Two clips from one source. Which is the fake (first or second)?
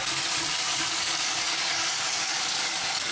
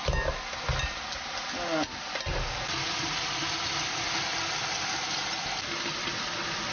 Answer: first